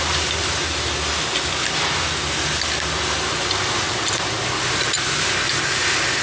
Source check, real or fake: real